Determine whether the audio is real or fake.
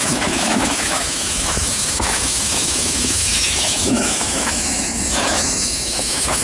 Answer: fake